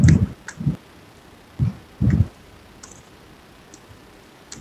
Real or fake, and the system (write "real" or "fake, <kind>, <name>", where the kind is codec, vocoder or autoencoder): real